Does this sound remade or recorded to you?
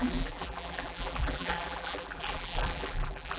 remade